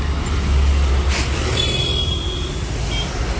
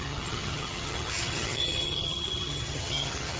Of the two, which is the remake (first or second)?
second